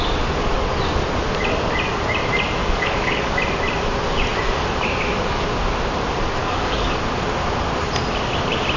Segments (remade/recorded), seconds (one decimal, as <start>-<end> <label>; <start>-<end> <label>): 0.0-2.6 recorded; 2.6-3.4 remade; 3.4-6.4 recorded; 6.4-7.0 remade; 7.0-8.8 recorded